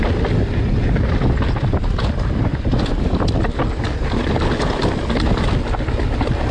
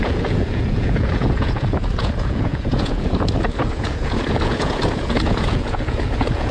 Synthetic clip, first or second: second